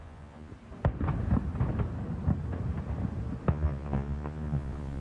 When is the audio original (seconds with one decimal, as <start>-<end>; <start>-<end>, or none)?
0.5-3.5